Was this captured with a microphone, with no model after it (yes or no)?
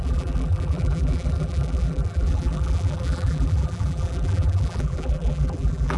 no